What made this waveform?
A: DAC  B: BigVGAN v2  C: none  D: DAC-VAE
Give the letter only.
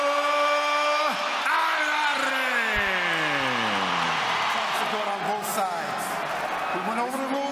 C